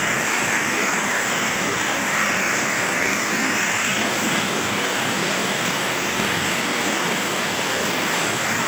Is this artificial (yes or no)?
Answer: yes